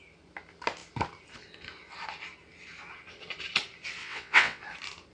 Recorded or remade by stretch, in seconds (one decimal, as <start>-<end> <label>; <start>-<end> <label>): 0.0-4.0 recorded; 4.0-4.6 remade; 4.6-5.1 recorded